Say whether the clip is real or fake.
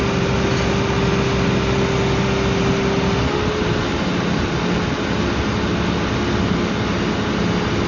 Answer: real